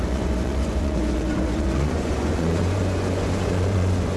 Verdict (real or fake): fake